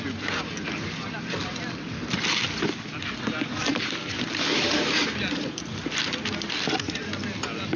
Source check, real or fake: real